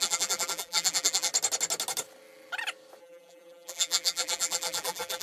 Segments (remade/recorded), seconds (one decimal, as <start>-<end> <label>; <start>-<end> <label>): 0.0-1.3 remade; 1.3-3.0 recorded; 3.0-5.2 remade